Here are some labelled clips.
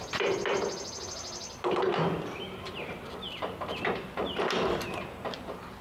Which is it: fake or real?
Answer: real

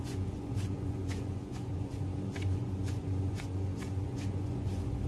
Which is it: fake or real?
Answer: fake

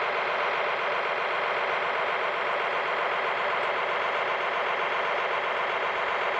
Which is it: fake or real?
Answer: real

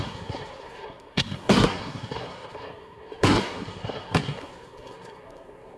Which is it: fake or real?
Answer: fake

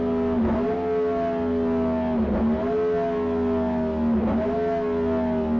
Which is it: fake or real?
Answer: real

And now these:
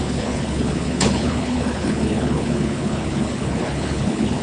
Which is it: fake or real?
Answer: fake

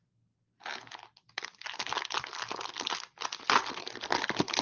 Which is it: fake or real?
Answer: real